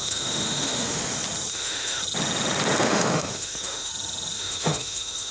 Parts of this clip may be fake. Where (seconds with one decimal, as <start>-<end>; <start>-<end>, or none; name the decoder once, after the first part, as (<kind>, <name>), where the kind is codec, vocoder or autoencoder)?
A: 0.0-1.0 (autoencoder, DAC-VAE); 1.5-2.0; 2.8-3.9; 4.4-5.3